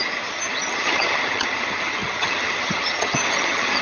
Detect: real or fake fake